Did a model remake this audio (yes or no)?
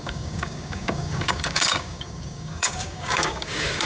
yes